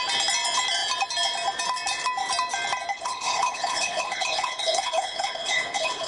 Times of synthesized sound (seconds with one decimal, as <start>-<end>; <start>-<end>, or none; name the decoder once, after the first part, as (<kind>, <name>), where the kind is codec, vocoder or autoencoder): 2.9-6.1 (codec, HILCodec)